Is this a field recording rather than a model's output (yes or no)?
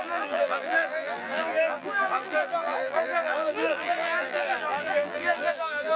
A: no